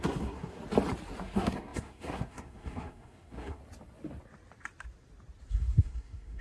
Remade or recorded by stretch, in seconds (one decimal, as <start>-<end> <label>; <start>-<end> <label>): 0.0-0.6 remade; 0.6-1.2 recorded; 1.2-3.6 remade; 3.6-5.5 recorded; 5.5-6.4 remade